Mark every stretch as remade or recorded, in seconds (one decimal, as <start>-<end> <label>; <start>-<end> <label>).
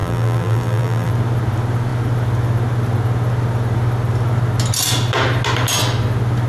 0.0-1.1 remade; 1.1-6.5 recorded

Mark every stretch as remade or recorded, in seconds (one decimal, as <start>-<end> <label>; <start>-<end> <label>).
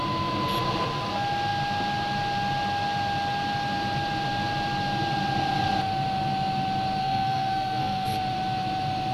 0.0-7.0 recorded; 7.0-8.2 remade; 8.2-9.1 recorded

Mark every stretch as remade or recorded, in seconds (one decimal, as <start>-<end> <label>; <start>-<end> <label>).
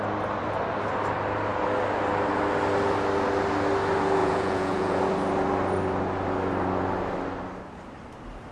0.0-4.2 recorded; 4.2-5.0 remade; 5.0-8.5 recorded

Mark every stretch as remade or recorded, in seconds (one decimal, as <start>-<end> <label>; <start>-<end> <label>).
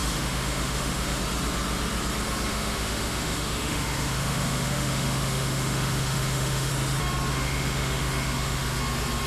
0.0-1.2 remade; 1.2-2.5 recorded; 2.5-6.7 remade; 6.7-7.3 recorded; 7.3-8.8 remade; 8.8-9.3 recorded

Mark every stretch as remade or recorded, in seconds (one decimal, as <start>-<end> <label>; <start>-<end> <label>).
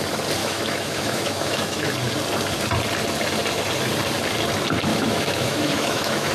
0.0-0.4 recorded; 0.4-1.9 remade; 1.9-4.9 recorded; 4.9-6.3 remade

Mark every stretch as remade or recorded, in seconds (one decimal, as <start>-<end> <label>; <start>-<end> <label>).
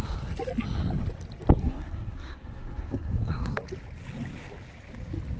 0.0-1.6 recorded; 1.6-3.5 remade; 3.5-5.4 recorded